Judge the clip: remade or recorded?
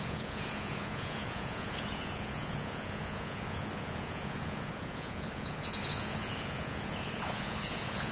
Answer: remade